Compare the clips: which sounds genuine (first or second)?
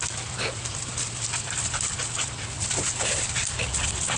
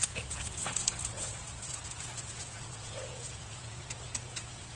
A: first